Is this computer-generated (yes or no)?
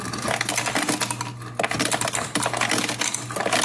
no